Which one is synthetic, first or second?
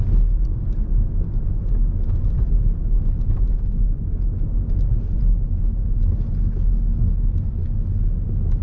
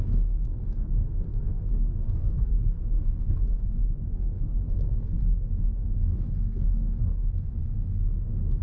second